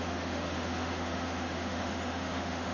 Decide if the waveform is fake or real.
fake